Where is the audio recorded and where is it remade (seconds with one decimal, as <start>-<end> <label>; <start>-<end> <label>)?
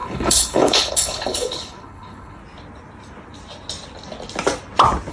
0.0-2.4 remade; 2.4-5.1 recorded